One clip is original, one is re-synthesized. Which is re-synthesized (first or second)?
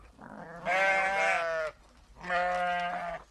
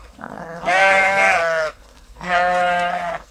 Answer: second